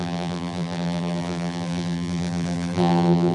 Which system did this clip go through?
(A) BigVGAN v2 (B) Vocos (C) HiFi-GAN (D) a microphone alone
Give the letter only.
A